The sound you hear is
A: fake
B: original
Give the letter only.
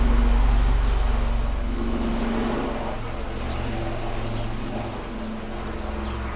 B